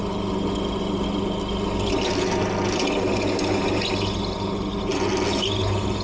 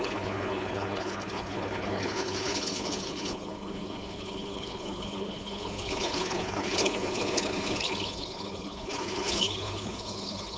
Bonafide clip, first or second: first